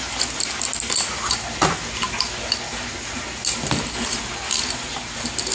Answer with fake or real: real